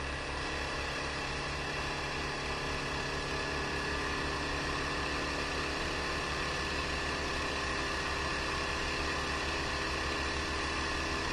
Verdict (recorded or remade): recorded